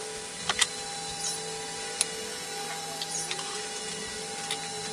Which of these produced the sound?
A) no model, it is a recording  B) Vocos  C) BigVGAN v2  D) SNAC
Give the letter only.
A